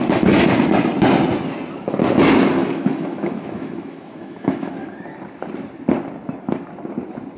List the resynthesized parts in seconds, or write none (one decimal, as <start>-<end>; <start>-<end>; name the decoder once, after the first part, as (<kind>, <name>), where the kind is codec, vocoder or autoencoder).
2.6-4.7 (autoencoder, DAC-VAE)